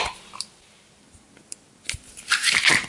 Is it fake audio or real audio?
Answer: real